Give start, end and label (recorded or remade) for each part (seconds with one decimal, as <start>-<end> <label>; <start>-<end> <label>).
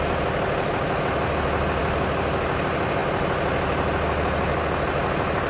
0.0-5.5 recorded